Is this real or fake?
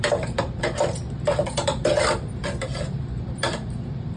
fake